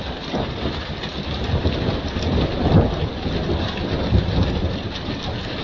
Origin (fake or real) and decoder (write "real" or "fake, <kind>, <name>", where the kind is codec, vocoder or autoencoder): real